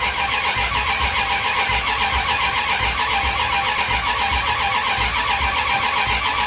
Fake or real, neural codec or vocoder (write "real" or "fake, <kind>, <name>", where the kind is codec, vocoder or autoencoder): real